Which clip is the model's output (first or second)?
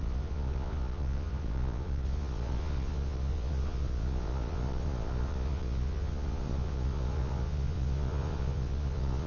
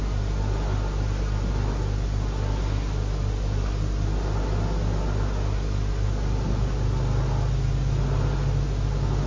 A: first